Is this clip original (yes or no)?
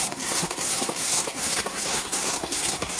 no